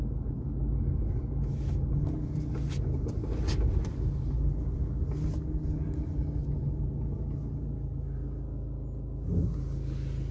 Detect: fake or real real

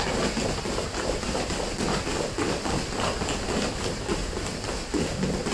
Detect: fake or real real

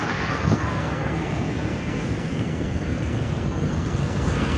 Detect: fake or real fake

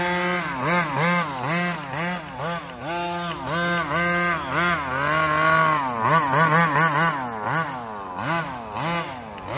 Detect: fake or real real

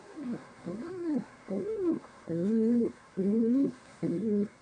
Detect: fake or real fake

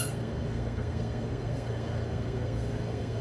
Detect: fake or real fake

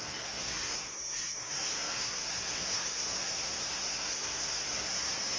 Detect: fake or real fake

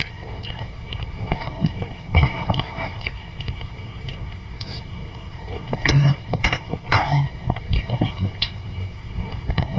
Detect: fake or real fake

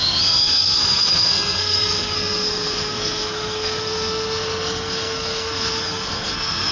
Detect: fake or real fake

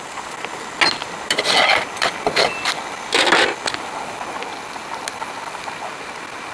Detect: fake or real real